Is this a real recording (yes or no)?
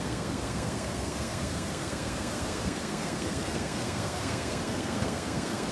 no